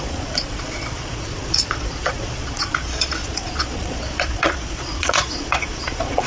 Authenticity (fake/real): fake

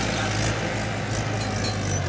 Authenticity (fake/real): real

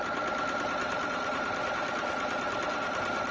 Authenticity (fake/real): real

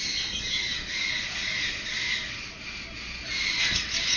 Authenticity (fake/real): real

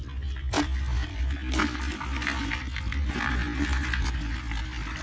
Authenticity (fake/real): real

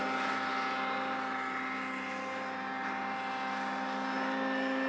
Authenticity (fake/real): real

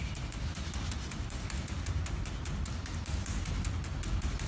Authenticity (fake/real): real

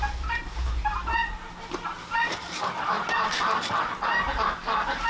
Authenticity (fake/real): real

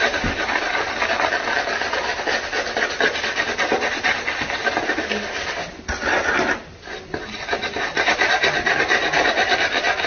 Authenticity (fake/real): real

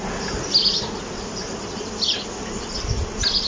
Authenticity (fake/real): real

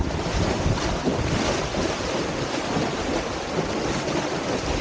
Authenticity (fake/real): real